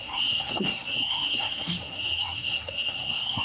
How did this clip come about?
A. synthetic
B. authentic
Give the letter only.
A